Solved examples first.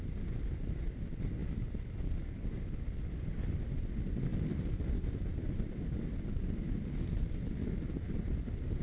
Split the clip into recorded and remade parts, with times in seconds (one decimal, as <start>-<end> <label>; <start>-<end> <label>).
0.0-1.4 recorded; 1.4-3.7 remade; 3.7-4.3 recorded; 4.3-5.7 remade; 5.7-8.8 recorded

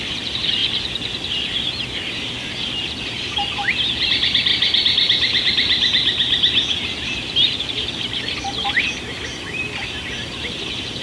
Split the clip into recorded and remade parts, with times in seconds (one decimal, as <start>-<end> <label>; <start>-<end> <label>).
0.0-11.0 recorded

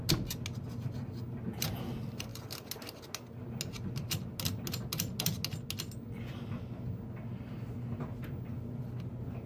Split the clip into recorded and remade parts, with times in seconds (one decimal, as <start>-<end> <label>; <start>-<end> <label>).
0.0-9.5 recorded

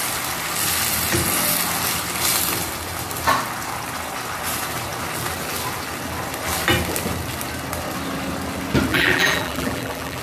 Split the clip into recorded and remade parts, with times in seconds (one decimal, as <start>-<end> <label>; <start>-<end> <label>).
0.0-8.9 recorded; 8.9-10.2 remade

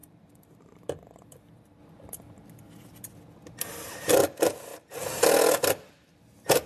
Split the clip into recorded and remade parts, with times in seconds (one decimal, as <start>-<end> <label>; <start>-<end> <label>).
0.0-1.4 remade; 1.4-6.7 recorded